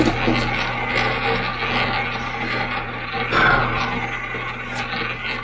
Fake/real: real